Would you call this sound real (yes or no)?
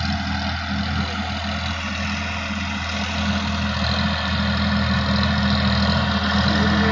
yes